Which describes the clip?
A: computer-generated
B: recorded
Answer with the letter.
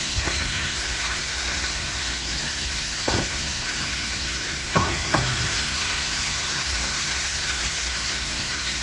A